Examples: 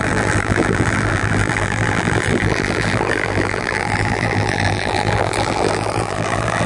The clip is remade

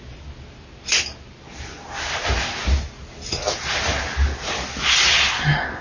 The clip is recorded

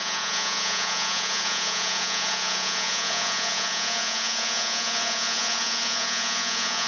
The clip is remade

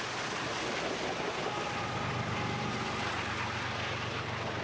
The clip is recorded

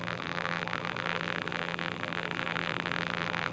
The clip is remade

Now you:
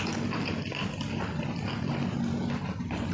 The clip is recorded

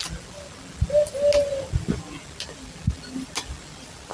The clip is recorded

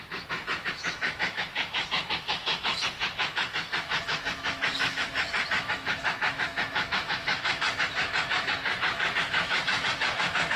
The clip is remade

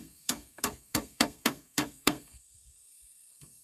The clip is remade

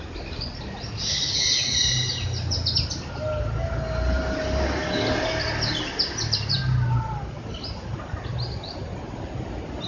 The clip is recorded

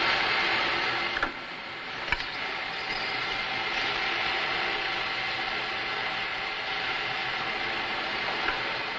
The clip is recorded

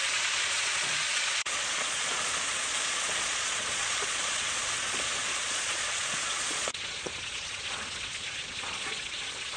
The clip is remade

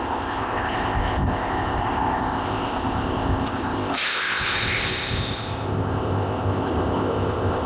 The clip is remade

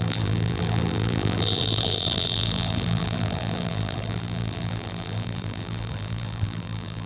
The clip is remade